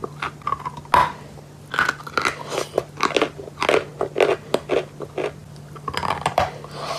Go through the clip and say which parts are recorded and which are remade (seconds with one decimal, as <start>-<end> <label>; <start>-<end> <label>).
0.0-5.4 recorded; 5.4-7.0 remade